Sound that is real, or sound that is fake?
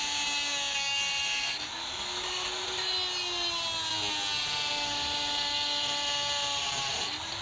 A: real